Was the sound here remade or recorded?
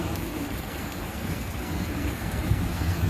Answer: remade